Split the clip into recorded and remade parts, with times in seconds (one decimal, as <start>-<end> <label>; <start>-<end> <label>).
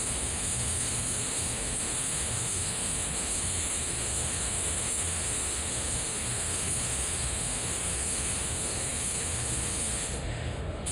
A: 0.0-10.9 remade